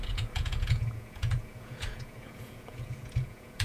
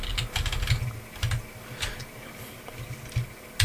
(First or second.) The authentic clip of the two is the second